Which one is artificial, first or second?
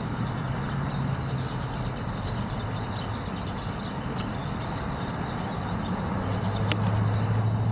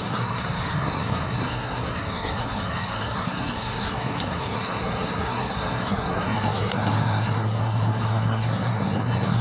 second